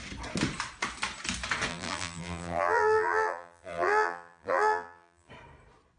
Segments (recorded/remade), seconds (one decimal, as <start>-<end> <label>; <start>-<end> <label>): 0.0-1.7 recorded; 1.7-5.3 remade; 5.3-6.0 recorded